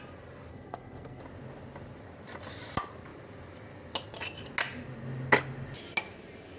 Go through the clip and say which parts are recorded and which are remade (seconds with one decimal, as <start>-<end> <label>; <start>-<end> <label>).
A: 0.0-0.5 recorded; 0.5-1.2 remade; 1.2-6.6 recorded